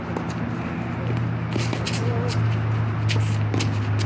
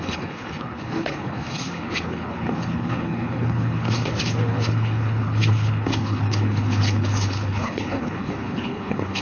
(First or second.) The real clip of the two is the first